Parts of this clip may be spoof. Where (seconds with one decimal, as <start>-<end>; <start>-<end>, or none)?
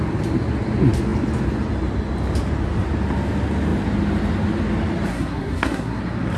5.1-6.0